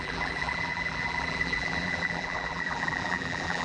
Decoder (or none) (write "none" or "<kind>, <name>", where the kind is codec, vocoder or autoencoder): vocoder, BigVGAN v2